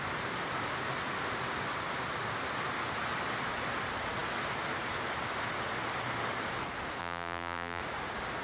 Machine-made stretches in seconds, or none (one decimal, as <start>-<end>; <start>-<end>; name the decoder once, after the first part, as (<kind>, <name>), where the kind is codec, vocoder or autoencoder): 7.0-7.8 (vocoder, BigVGAN v2)